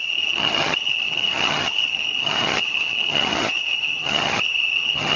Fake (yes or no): yes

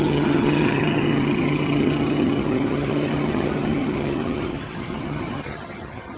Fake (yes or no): yes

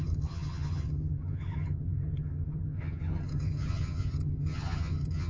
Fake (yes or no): yes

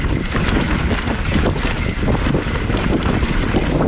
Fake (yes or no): no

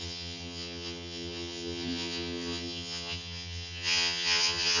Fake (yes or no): yes